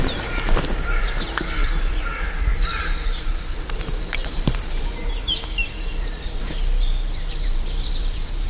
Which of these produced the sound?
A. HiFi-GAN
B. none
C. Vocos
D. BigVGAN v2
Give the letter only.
D